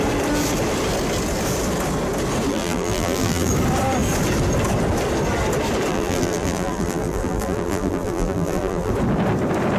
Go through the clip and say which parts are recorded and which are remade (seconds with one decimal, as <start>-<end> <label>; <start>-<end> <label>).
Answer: 0.0-2.5 recorded; 2.5-3.5 remade; 3.5-5.9 recorded; 5.9-8.9 remade; 8.9-9.8 recorded